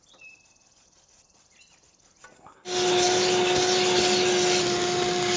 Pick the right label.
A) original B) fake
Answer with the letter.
A